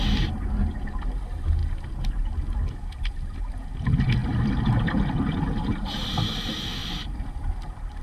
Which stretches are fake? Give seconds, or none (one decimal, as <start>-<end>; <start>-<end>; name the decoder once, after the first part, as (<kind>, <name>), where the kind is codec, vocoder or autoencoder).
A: 6.8-8.0 (vocoder, BigVGAN v2)